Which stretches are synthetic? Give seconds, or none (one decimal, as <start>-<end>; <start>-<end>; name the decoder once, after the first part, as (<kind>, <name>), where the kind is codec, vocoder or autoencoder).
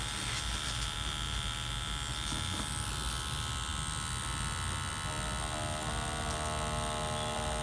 none